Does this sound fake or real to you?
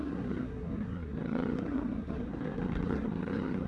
fake